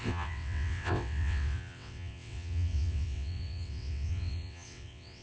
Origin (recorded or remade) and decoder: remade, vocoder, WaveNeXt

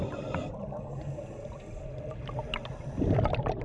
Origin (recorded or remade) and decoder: recorded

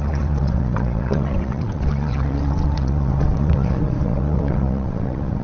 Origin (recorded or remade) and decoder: remade, vocoder, WaveNeXt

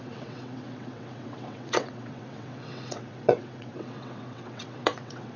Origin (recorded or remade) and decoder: remade, vocoder, WaveNeXt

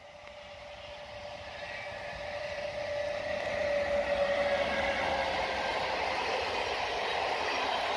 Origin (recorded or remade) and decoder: recorded